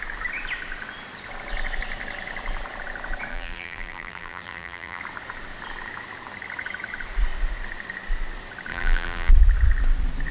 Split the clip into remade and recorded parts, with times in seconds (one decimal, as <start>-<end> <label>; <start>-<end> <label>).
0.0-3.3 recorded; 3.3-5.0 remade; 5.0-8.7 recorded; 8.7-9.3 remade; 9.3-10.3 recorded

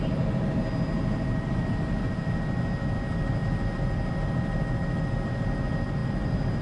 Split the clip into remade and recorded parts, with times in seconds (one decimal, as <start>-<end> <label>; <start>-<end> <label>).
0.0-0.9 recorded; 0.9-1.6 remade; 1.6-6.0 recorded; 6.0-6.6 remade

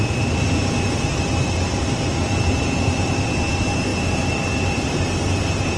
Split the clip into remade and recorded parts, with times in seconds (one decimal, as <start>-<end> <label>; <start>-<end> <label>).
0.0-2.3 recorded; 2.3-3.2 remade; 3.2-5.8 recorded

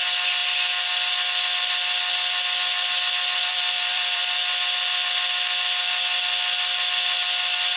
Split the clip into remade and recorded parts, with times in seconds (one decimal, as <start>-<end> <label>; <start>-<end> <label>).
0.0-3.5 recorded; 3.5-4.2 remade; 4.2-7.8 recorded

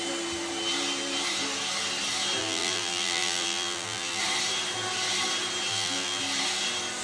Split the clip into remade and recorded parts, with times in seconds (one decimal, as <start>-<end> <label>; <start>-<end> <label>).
0.0-2.4 recorded; 2.4-4.2 remade; 4.2-5.7 recorded; 5.7-6.2 remade; 6.2-7.0 recorded

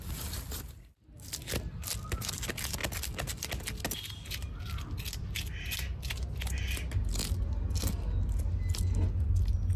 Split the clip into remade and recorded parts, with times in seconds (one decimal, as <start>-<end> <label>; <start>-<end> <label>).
0.0-9.8 recorded